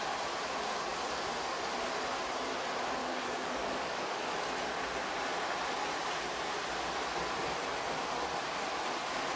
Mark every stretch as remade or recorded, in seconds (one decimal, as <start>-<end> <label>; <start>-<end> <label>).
0.0-3.0 recorded; 3.0-4.4 remade; 4.4-9.4 recorded